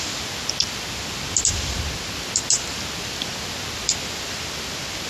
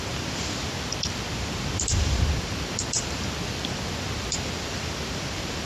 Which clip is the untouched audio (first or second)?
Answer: first